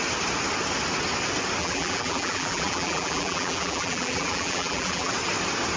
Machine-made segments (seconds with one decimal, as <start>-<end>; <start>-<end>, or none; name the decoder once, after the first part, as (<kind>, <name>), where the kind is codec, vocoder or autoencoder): 1.6-5.1 (vocoder, BigVGAN v2)